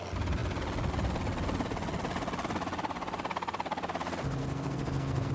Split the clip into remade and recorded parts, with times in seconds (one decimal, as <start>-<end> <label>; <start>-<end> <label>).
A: 0.0-4.4 recorded; 4.4-5.3 remade